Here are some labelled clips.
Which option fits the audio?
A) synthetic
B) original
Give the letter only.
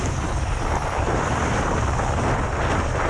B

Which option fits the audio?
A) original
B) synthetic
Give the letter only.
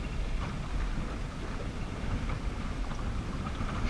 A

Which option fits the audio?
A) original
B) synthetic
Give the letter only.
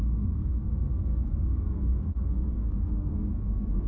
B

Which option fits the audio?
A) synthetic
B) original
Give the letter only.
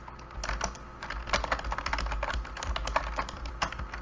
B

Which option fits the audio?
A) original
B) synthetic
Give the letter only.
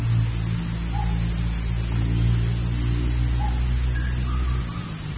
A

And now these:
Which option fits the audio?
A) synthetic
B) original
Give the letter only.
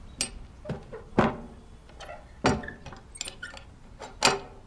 B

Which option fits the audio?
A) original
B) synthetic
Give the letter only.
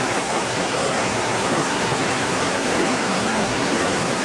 B